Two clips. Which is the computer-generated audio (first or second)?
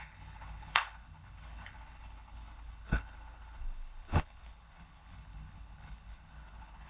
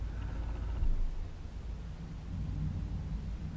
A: first